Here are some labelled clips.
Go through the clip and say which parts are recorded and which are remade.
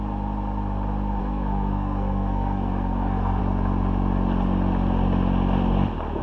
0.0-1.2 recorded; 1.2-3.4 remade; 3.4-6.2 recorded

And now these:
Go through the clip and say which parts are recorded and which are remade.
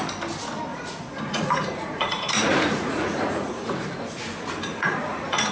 0.0-0.7 recorded; 0.7-4.0 remade; 4.0-4.7 recorded; 4.7-5.5 remade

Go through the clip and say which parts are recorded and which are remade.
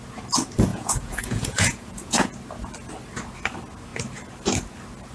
0.0-0.7 recorded; 0.7-2.3 remade; 2.3-5.1 recorded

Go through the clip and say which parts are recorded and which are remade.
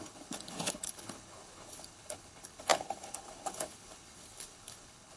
0.0-5.2 remade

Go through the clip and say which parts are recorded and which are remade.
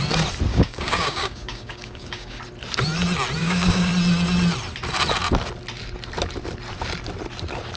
0.0-0.5 recorded; 0.5-2.4 remade; 2.4-3.4 recorded; 3.4-3.9 remade; 3.9-7.8 recorded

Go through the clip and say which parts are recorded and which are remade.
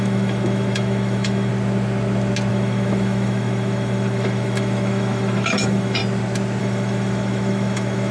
0.0-1.5 remade; 1.5-2.5 recorded; 2.5-6.0 remade; 6.0-6.6 recorded; 6.6-8.1 remade